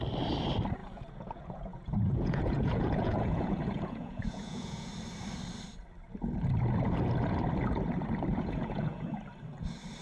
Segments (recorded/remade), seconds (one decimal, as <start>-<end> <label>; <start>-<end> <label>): 0.0-0.8 recorded; 0.8-4.9 remade; 4.9-8.3 recorded; 8.3-9.1 remade; 9.1-10.0 recorded